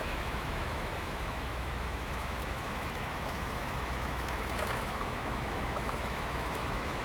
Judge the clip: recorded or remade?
remade